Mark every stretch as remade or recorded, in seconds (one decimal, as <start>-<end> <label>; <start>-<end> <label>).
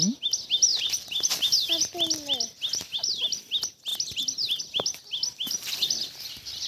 0.0-6.7 recorded